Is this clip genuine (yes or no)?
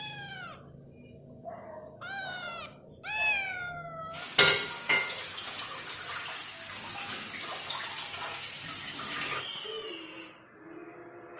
yes